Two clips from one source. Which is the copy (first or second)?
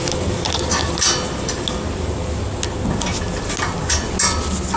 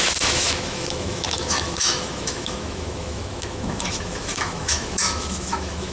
second